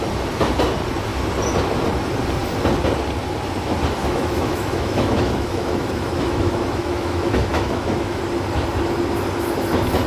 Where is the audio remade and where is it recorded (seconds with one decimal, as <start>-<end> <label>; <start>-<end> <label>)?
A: 0.0-4.0 recorded; 4.0-8.2 remade; 8.2-10.1 recorded

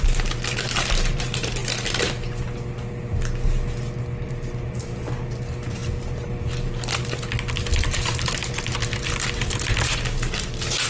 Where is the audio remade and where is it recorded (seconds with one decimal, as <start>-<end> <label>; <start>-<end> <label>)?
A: 0.0-10.9 recorded

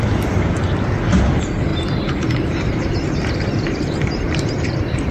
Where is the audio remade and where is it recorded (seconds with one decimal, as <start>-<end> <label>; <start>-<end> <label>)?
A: 0.0-1.7 recorded; 1.7-5.1 remade

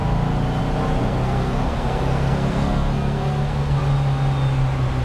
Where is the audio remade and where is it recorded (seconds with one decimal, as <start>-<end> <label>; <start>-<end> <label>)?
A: 0.0-1.0 recorded; 1.0-3.8 remade; 3.8-5.0 recorded

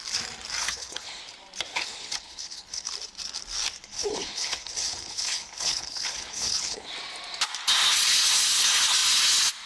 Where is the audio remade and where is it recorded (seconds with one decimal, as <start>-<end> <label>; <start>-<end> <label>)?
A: 0.0-0.6 recorded; 0.6-1.2 remade; 1.2-1.7 recorded; 1.7-2.9 remade; 2.9-3.8 recorded; 3.8-6.9 remade; 6.9-9.7 recorded

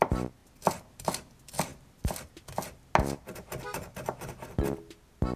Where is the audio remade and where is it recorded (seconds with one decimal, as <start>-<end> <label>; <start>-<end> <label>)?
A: 0.0-5.4 recorded

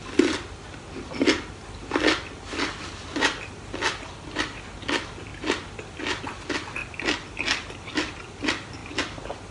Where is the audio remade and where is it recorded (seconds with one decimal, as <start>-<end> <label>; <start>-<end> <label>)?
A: 0.0-9.5 recorded